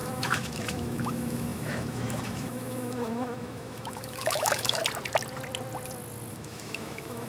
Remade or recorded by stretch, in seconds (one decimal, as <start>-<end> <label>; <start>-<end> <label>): 0.0-4.8 remade; 4.8-6.3 recorded; 6.3-7.3 remade